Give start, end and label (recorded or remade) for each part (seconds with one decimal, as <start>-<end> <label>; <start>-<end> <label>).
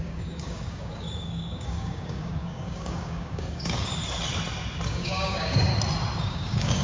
0.0-3.9 remade; 3.9-4.9 recorded; 4.9-5.7 remade; 5.7-6.2 recorded; 6.2-6.8 remade